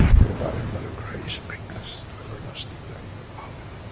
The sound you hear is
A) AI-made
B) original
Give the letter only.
B